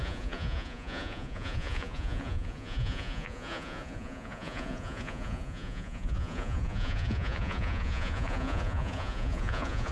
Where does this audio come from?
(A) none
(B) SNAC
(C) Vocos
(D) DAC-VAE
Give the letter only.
C